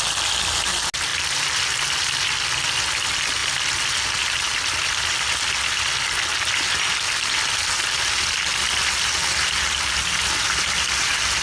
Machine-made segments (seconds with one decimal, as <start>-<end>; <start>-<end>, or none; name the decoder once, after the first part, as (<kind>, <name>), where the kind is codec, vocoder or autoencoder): none